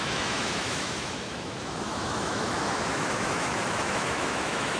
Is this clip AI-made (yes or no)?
yes